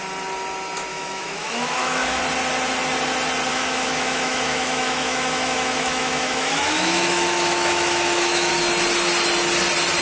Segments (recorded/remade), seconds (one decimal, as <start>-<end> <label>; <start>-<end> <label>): 0.0-0.9 recorded; 0.9-2.2 remade; 2.2-3.5 recorded; 3.5-8.5 remade; 8.5-10.0 recorded